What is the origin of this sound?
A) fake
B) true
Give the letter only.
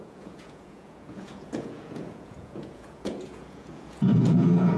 A